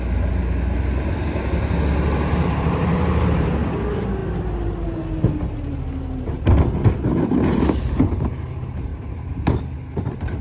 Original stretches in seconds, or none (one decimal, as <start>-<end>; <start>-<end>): 0.0-2.1; 3.2-8.9; 9.4-10.4